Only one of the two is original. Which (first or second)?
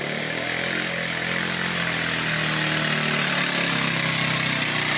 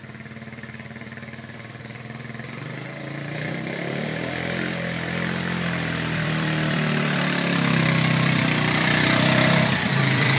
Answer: first